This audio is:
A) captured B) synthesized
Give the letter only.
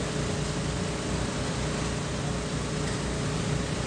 A